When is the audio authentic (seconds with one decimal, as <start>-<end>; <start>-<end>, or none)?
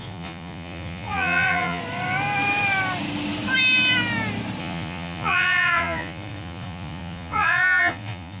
1.8-4.6